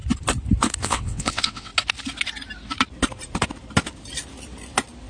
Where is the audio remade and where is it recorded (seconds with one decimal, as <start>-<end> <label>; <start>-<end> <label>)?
0.0-0.8 recorded; 0.8-1.7 remade; 1.7-5.1 recorded